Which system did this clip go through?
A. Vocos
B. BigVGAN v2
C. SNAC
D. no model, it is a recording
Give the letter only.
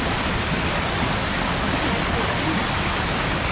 D